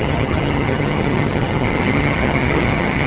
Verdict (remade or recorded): remade